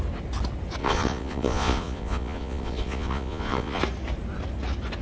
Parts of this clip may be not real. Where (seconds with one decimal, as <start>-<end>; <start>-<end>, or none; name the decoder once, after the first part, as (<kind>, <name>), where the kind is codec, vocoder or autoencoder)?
0.8-3.8 (vocoder, Vocos)